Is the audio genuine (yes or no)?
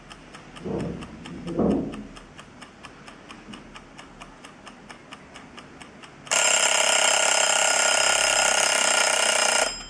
yes